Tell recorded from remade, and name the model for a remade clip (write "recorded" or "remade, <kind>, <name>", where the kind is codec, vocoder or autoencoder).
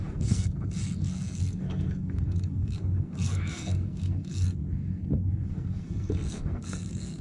remade, codec, SNAC